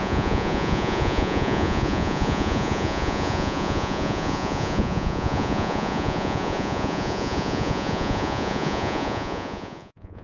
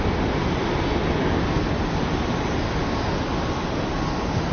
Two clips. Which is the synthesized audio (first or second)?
first